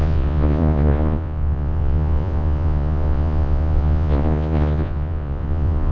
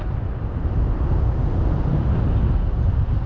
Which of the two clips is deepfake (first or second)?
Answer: first